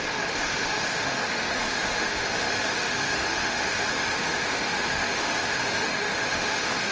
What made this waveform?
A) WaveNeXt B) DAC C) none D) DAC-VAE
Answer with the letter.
D